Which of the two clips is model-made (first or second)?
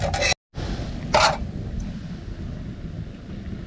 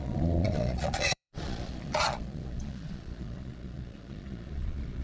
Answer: second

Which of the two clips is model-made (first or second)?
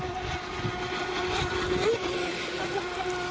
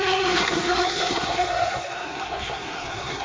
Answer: second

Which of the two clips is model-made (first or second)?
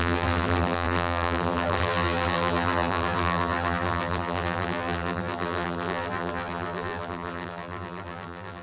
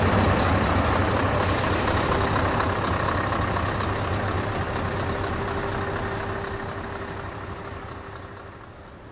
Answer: first